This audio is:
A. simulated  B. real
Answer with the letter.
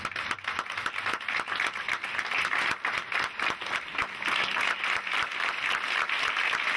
B